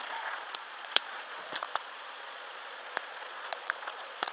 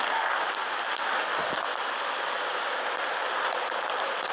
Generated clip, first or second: first